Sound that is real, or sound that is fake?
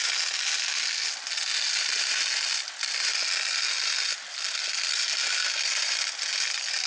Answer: real